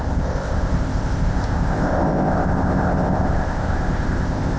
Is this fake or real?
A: fake